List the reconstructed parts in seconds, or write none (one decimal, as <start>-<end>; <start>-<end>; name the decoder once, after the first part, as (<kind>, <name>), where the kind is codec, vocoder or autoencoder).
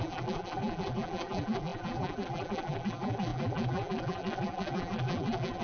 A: 0.0-5.6 (vocoder, BigVGAN v2)